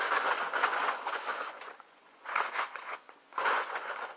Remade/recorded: remade